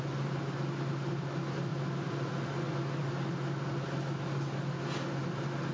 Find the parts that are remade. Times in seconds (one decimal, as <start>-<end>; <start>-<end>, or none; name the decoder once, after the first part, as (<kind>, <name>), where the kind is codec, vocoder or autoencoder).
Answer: none